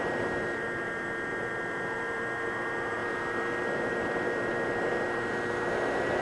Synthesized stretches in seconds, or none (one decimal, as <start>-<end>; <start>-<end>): 0.0-6.2